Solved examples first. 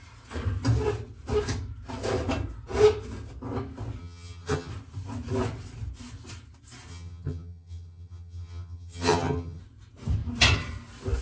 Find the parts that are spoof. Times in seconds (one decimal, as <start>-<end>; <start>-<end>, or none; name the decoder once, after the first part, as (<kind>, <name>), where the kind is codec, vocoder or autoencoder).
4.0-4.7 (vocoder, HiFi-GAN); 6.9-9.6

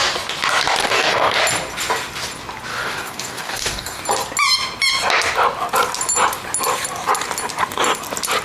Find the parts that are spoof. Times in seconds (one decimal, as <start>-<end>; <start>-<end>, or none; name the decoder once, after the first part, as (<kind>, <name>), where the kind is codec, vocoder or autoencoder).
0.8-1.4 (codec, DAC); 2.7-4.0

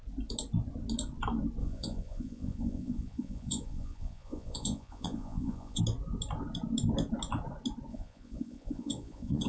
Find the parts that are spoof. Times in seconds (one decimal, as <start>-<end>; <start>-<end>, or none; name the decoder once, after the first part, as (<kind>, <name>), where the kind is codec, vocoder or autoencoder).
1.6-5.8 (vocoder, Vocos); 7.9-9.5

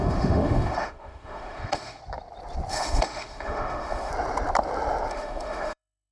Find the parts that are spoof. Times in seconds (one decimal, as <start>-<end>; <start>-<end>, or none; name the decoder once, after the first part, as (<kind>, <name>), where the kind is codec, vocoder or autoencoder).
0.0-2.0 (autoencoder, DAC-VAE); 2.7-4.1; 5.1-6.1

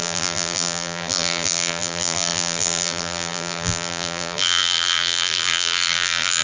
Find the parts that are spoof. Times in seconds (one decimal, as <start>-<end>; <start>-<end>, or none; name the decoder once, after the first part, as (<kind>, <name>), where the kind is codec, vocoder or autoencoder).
0.0-6.4 (vocoder, BigVGAN v2)